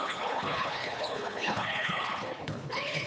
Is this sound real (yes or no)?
no